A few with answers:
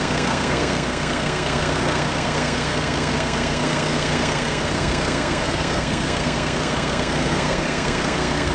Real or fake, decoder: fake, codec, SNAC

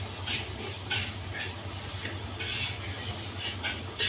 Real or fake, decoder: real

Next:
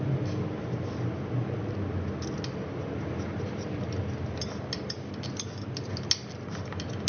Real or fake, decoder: real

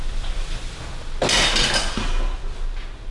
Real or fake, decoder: real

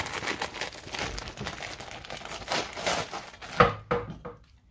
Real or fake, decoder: real